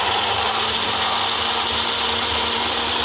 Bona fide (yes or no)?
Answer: yes